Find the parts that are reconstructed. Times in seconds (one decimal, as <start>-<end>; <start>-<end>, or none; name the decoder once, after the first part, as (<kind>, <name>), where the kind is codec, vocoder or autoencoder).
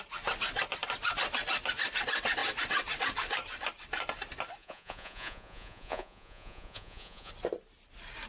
4.6-7.3 (vocoder, Vocos)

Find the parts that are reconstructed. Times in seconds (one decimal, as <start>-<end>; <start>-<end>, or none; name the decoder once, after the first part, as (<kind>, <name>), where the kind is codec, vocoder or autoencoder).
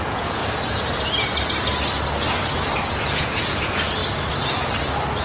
0.0-0.4 (vocoder, Vocos); 2.9-4.0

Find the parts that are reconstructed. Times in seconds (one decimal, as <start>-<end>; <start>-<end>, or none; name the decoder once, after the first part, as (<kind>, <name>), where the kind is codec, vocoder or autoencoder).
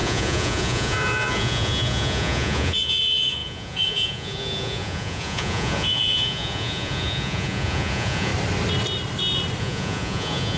0.0-8.3 (vocoder, Vocos); 9.6-10.6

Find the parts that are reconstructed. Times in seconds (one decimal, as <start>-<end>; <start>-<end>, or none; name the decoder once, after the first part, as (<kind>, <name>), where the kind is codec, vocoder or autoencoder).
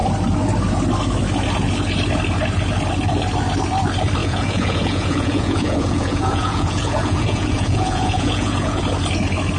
4.2-8.8 (vocoder, Vocos)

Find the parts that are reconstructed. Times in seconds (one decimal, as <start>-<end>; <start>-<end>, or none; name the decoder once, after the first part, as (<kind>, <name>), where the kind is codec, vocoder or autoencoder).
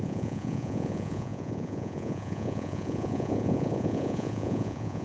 0.0-5.0 (vocoder, Vocos)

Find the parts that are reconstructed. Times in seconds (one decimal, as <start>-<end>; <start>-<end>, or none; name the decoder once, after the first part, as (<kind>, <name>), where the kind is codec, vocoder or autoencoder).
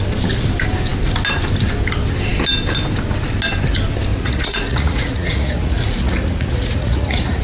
4.1-7.4 (vocoder, Vocos)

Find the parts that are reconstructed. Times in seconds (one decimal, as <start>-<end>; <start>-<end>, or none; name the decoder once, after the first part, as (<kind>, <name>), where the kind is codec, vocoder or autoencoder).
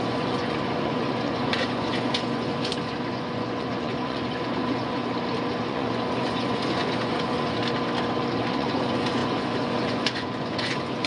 0.0-5.0 (vocoder, Vocos); 5.6-7.6; 8.4-11.1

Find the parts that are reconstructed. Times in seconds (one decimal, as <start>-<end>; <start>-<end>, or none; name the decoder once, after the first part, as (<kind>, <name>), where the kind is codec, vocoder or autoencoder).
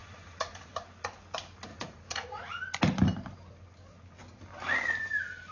0.0-0.7 (vocoder, Vocos); 1.7-2.4